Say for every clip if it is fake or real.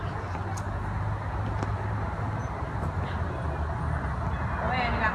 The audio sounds real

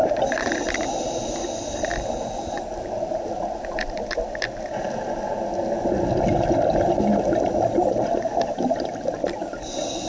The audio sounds real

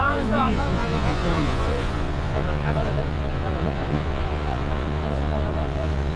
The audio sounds fake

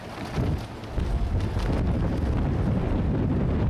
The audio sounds real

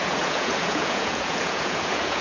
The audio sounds fake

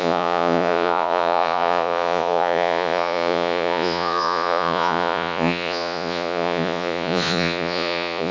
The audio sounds fake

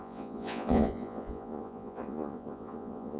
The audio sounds fake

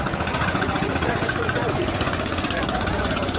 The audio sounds fake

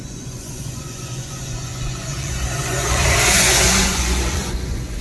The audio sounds fake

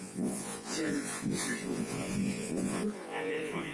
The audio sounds fake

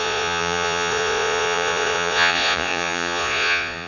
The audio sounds fake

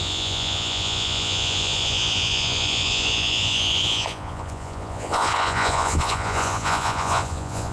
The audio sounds fake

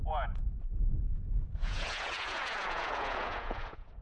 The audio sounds fake